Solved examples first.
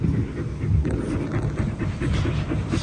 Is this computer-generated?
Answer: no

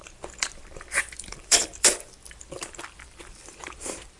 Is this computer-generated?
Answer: yes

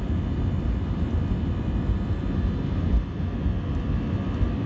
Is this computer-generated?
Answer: no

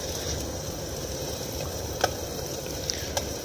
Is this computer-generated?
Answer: yes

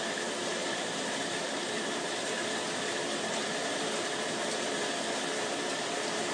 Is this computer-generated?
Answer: yes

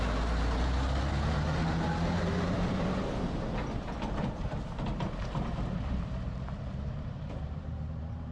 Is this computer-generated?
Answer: yes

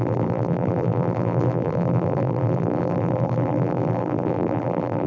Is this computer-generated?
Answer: yes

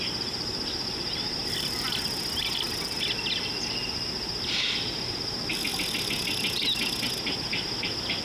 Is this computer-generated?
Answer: no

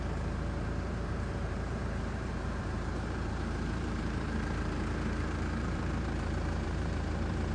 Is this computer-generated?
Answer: yes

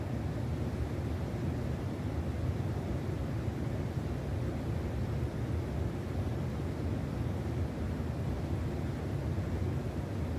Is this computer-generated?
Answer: no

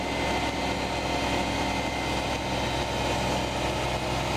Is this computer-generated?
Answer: no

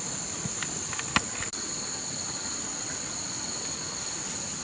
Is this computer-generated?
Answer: no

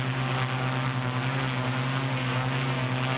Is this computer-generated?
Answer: no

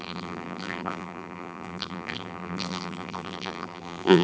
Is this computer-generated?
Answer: yes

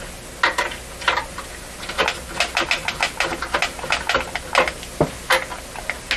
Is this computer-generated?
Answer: no